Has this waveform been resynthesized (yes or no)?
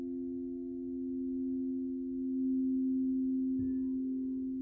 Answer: no